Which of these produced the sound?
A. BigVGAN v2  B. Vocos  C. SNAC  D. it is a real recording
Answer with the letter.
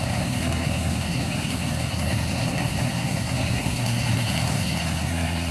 C